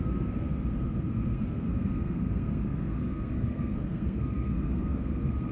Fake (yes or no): yes